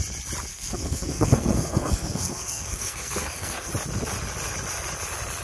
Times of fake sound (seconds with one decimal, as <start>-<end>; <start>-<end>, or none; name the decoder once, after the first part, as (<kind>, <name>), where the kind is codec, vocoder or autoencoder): 0.5-3.7 (codec, SNAC)